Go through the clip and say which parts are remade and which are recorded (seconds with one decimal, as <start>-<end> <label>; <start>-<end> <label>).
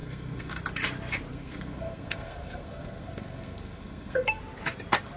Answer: 0.0-0.6 remade; 0.6-1.3 recorded; 1.3-4.4 remade; 4.4-5.2 recorded